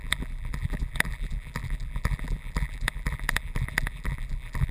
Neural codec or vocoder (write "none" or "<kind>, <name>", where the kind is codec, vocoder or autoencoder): vocoder, BigVGAN v2